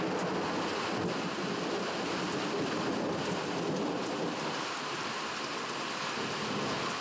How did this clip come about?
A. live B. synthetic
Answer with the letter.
A